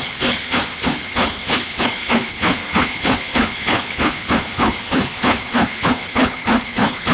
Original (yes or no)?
no